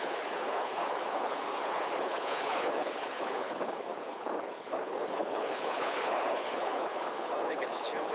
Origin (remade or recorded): remade